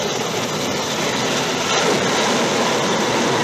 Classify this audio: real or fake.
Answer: real